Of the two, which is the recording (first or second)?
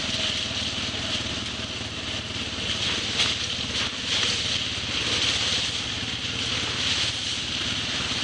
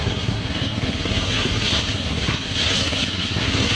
first